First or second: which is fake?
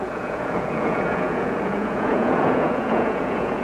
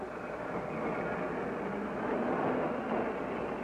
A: first